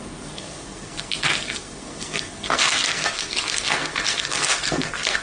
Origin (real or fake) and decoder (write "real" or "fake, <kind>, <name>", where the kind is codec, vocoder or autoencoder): fake, codec, SNAC